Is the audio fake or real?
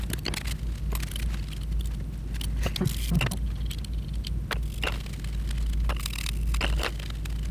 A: real